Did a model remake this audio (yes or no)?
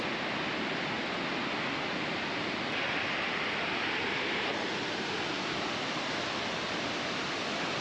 no